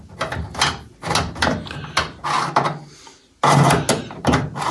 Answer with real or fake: real